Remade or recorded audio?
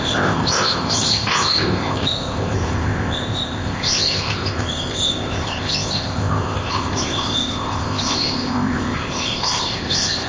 remade